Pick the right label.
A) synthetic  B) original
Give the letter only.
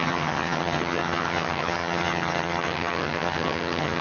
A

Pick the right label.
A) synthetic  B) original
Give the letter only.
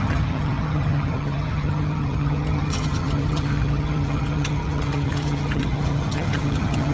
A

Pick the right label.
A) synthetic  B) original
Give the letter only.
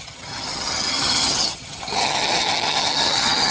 A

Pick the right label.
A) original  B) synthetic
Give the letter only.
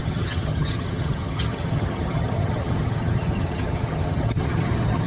B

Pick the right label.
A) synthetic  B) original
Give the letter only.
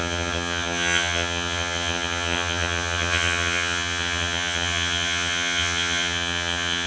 A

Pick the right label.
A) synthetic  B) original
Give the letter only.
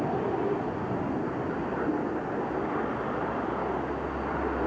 B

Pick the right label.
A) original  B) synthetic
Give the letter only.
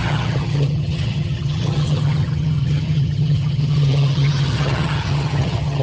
B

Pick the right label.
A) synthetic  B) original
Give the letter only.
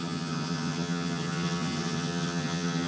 A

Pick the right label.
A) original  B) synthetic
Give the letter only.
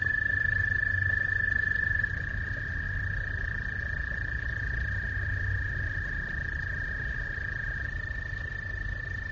A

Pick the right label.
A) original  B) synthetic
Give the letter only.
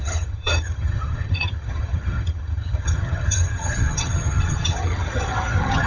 B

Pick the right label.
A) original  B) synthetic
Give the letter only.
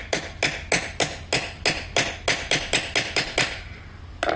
A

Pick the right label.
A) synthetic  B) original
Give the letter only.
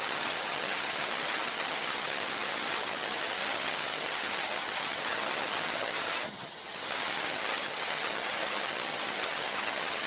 A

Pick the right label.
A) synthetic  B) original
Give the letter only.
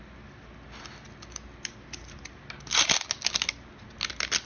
B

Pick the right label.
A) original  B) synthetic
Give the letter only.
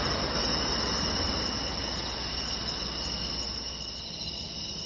A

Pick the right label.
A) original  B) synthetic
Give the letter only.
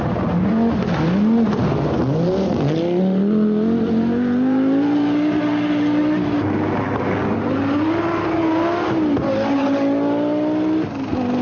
A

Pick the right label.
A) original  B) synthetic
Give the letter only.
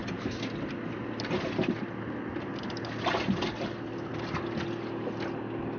A